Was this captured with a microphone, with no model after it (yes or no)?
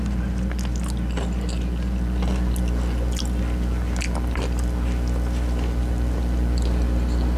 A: yes